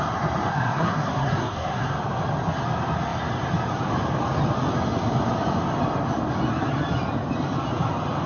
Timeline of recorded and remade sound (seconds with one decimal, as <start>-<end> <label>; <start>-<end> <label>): 0.0-0.5 recorded; 0.5-1.9 remade; 1.9-8.3 recorded

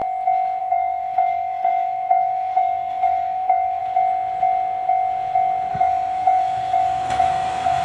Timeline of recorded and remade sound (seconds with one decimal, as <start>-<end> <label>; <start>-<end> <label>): 0.0-0.6 recorded; 0.6-3.8 remade; 3.8-5.7 recorded; 5.7-7.8 remade

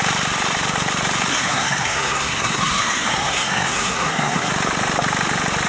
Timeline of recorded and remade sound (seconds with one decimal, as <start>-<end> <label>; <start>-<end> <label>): 0.0-1.3 recorded; 1.3-4.5 remade; 4.5-5.7 recorded

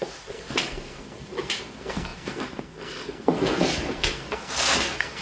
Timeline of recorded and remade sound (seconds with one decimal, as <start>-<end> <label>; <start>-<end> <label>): 0.0-5.2 remade